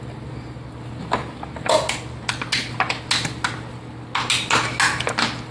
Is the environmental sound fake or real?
real